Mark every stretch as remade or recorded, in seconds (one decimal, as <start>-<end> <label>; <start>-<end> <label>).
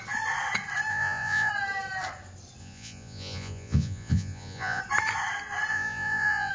0.0-0.9 recorded; 0.9-1.5 remade; 1.5-2.6 recorded; 2.6-4.8 remade; 4.8-5.7 recorded; 5.7-6.5 remade